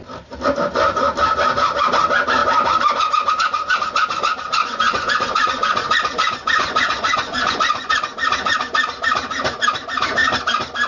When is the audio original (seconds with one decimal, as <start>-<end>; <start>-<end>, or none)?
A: 0.0-4.6; 7.9-10.9